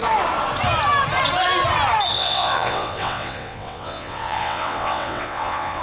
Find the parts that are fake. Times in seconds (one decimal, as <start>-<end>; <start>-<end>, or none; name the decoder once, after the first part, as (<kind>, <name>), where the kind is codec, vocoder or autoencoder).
2.1-5.8 (vocoder, WaveNeXt)